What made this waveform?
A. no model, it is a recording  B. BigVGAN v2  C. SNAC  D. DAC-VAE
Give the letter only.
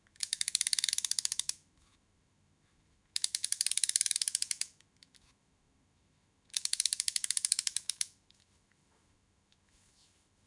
D